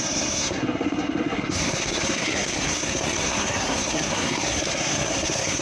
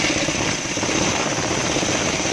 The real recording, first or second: second